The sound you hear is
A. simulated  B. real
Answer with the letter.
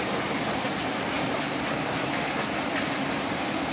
B